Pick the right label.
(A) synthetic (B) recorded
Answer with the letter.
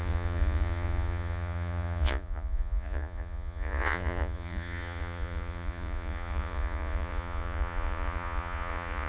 A